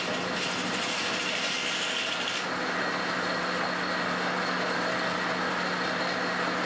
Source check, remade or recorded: recorded